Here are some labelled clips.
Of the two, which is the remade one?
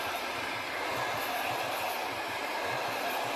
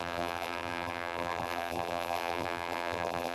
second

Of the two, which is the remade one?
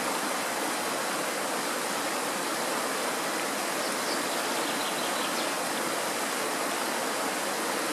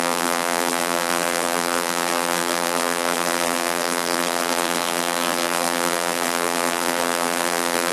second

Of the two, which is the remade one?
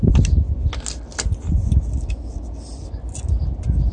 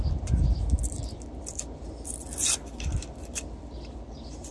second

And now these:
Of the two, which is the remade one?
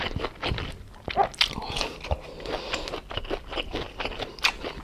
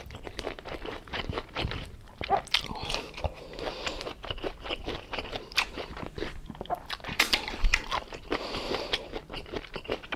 second